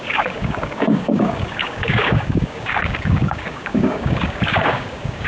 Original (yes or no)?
no